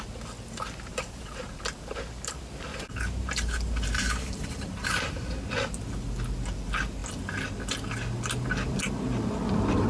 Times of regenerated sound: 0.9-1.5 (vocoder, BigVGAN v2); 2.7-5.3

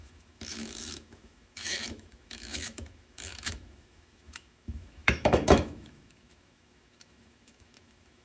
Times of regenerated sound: 0.0-8.2 (autoencoder, DAC-VAE)